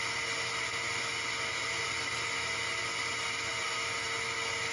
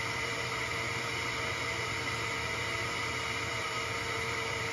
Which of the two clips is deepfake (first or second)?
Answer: second